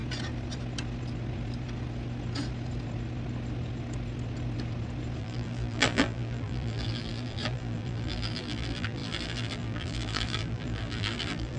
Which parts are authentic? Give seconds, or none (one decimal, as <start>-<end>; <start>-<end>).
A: 0.0-5.2